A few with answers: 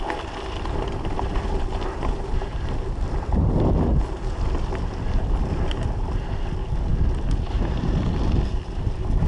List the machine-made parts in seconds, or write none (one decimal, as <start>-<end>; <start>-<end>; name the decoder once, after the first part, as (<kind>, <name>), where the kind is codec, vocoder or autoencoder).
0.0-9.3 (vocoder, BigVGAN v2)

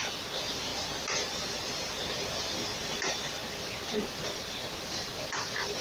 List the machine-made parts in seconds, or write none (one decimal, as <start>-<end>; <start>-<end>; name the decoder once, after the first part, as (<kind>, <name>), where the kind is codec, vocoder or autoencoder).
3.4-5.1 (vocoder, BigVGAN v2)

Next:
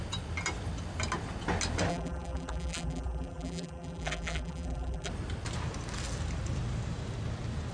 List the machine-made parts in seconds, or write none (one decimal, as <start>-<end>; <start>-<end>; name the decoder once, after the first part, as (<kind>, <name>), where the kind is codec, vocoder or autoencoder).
1.9-5.1 (vocoder, BigVGAN v2)

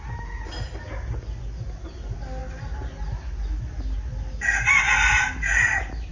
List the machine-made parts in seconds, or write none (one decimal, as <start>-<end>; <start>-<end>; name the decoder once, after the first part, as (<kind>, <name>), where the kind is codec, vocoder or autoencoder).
none

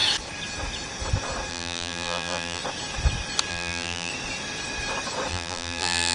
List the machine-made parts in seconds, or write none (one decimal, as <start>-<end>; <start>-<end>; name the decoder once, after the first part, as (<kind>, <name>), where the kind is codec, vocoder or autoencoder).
1.5-2.6 (vocoder, BigVGAN v2); 3.5-4.1; 5.3-6.1

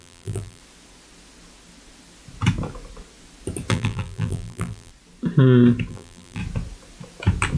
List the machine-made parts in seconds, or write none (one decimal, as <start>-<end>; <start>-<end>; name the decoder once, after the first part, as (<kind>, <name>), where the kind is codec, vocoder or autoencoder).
0.0-0.6 (vocoder, BigVGAN v2); 3.7-4.9; 5.9-6.4

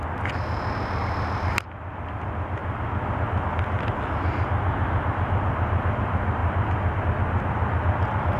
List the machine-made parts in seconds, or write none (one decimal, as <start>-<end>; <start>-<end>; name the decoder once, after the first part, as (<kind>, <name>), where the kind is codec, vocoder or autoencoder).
0.0-2.6 (vocoder, BigVGAN v2); 3.5-8.4

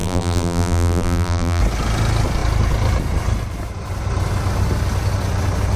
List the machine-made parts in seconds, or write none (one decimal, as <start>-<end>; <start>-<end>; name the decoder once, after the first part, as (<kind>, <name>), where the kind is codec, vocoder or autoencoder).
0.0-1.6 (vocoder, BigVGAN v2)